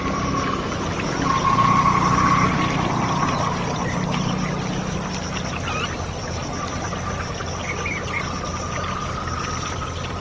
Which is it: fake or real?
real